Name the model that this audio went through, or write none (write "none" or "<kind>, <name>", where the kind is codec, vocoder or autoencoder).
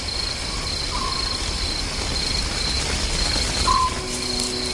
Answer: none